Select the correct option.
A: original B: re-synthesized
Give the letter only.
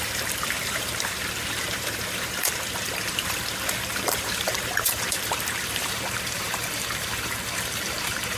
B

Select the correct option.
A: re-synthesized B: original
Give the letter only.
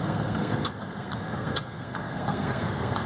A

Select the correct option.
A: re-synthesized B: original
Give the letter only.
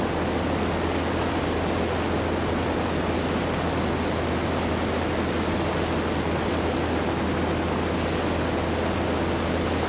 B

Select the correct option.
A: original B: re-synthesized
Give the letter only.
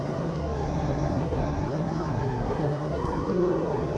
B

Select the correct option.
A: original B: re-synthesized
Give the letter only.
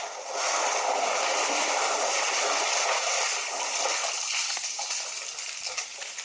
A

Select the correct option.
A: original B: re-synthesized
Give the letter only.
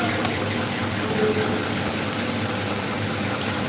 A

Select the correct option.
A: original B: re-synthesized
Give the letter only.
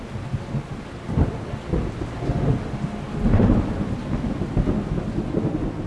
A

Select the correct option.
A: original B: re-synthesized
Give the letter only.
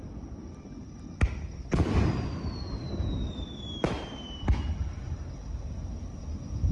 A